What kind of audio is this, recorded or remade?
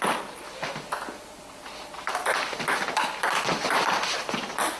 recorded